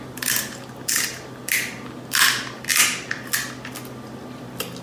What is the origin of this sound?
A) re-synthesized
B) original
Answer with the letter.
B